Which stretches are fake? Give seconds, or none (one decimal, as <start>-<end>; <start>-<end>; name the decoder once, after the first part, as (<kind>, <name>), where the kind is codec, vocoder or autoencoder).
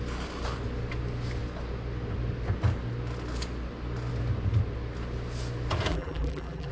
5.9-6.7 (vocoder, BigVGAN v2)